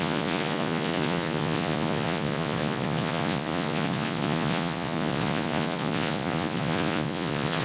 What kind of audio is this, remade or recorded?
remade